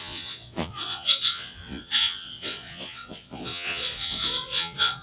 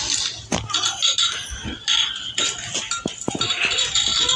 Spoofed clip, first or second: first